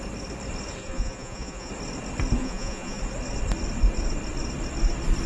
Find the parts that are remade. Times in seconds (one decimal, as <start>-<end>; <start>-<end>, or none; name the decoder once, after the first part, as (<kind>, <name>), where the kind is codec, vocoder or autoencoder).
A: 0.8-1.7 (vocoder, Vocos); 2.4-3.0